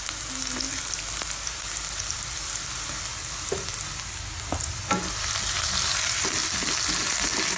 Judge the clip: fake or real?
real